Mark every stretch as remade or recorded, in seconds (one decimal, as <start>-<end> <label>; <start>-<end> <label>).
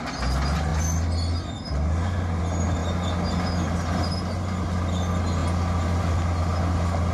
0.0-7.1 recorded